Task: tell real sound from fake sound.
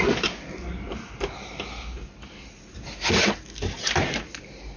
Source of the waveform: real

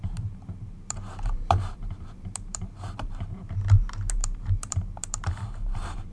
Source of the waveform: fake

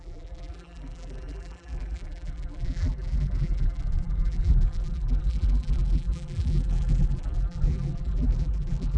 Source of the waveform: fake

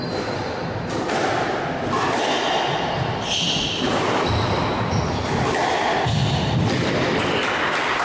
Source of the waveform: real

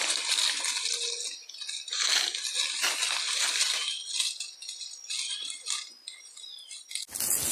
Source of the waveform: real